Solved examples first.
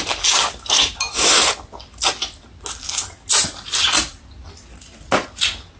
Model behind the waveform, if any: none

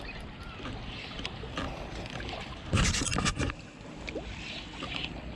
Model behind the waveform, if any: none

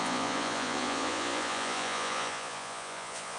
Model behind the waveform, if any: vocoder, Vocos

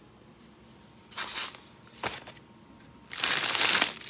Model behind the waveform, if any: vocoder, BigVGAN v2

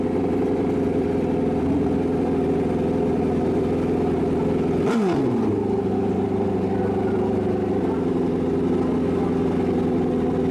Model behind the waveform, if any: none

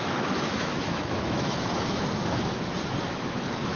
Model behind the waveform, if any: autoencoder, DAC-VAE